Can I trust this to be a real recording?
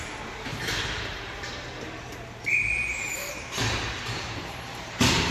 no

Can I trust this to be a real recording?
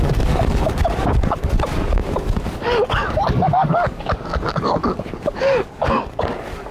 no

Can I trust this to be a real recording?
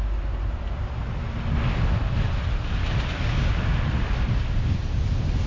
yes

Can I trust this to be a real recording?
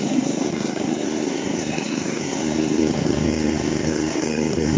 no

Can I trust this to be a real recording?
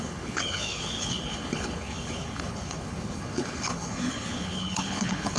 no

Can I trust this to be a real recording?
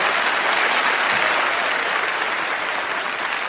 yes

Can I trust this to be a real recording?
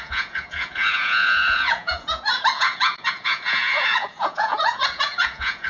no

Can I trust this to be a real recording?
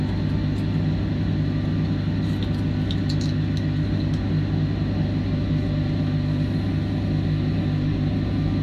yes